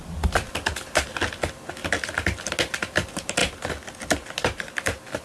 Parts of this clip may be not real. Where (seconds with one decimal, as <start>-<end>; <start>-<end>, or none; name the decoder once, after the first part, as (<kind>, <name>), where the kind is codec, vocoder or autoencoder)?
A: none